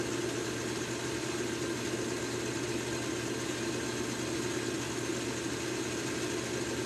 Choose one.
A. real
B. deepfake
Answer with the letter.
A